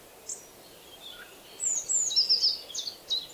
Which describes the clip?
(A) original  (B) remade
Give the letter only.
A